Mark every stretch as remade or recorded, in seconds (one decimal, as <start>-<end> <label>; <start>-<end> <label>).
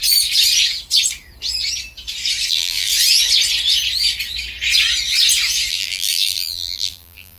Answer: 0.0-2.5 recorded; 2.5-2.9 remade; 2.9-5.7 recorded; 5.7-7.4 remade